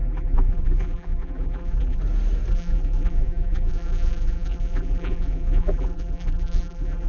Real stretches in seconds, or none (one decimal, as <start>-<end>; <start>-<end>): 2.0-2.5